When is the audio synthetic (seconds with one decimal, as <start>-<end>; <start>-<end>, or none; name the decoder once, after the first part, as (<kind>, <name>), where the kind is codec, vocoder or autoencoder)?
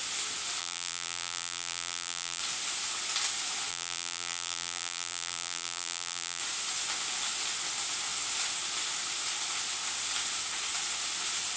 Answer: 0.6-2.4 (vocoder, BigVGAN v2); 3.7-6.4